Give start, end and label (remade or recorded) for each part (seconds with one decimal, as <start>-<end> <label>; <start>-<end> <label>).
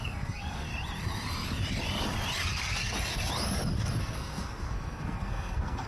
0.0-0.7 remade; 0.7-4.0 recorded; 4.0-5.9 remade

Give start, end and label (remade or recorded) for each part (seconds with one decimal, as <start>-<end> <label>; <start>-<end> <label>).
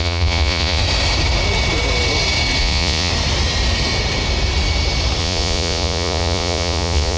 0.0-0.8 remade; 0.8-2.6 recorded; 2.6-3.1 remade; 3.1-5.2 recorded; 5.2-7.2 remade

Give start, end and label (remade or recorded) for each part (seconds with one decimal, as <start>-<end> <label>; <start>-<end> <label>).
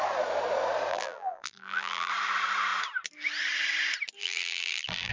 0.0-0.9 recorded; 0.9-2.1 remade; 2.1-4.2 recorded; 4.2-5.1 remade